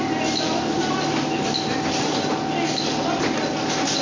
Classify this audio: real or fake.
real